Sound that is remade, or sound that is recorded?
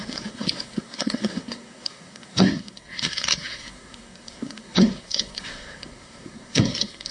remade